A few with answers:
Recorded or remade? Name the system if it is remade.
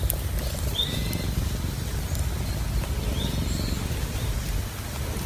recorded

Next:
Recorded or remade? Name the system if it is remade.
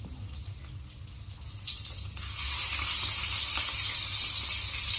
recorded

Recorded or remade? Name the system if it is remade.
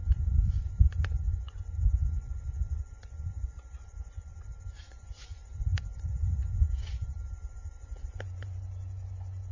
remade, vocoder, Vocos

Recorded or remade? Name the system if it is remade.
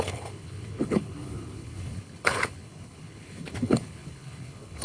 remade, codec, HILCodec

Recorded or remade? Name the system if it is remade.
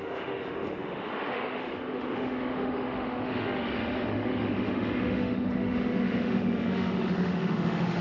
remade, autoencoder, DAC-VAE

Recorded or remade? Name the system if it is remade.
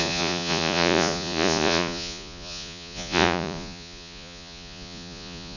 remade, vocoder, Vocos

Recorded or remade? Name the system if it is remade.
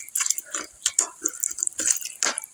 recorded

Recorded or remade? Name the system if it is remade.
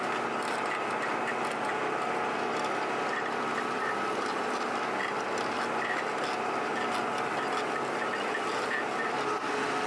recorded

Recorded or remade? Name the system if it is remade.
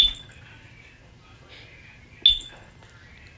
recorded